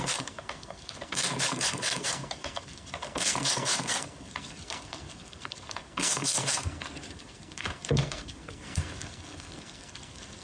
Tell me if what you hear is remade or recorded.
remade